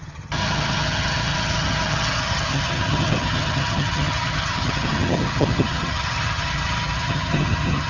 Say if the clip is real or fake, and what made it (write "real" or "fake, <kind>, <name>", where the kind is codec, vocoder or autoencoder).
fake, vocoder, HiFi-GAN